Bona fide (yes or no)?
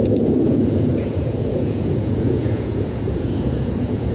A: no